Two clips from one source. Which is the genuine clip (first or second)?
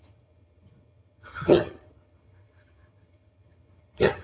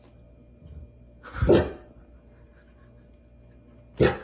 second